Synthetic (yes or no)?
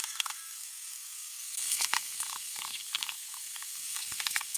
yes